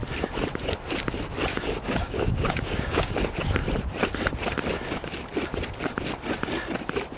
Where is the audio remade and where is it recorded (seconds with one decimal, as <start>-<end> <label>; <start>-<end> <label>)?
0.0-1.5 recorded; 1.5-3.1 remade; 3.1-7.2 recorded